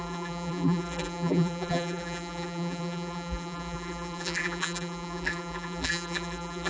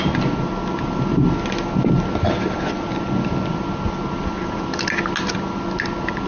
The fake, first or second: first